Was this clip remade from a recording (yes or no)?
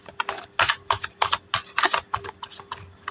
no